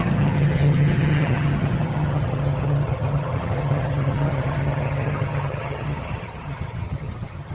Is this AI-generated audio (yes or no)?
yes